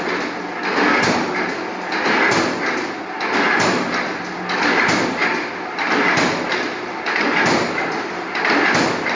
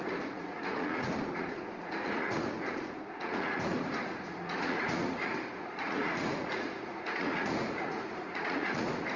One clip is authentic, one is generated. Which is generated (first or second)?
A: second